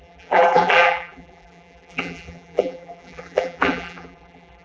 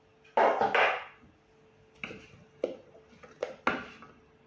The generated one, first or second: first